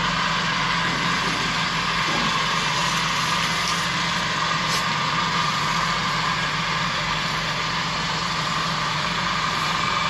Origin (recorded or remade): remade